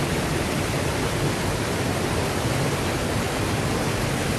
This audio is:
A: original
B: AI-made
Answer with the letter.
A